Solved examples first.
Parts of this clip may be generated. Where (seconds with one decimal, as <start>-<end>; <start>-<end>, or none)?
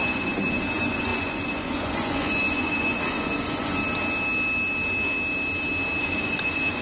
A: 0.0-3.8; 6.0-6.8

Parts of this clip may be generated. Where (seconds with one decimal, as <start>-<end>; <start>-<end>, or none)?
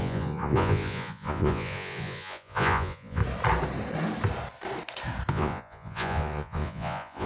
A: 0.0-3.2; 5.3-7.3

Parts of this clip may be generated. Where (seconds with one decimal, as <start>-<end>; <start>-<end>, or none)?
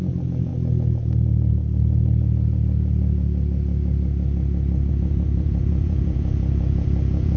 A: 0.0-0.5; 4.9-7.4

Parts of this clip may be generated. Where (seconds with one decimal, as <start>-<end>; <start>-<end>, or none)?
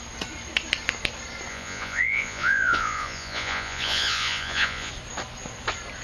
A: 1.5-4.9